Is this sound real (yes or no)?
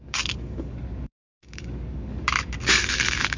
no